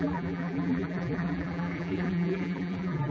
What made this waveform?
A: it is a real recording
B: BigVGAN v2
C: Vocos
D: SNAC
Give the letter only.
B